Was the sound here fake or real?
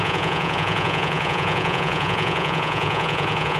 fake